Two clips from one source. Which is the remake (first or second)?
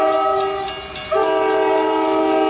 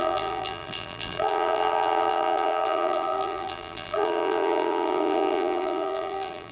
second